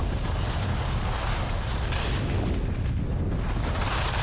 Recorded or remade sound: recorded